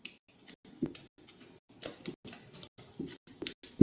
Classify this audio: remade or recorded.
recorded